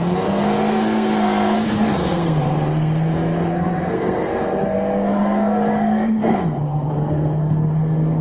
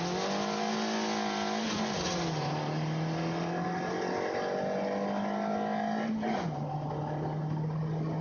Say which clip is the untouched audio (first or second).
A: second